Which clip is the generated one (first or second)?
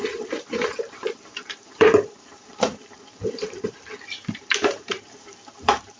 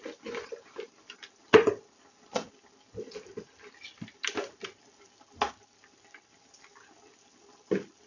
first